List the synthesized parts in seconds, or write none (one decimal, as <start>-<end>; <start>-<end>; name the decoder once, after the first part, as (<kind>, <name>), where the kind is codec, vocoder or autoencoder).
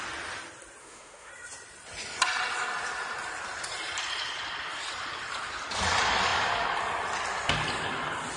0.8-1.3 (autoencoder, DAC-VAE)